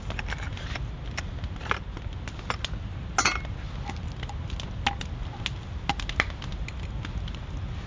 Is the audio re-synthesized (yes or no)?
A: no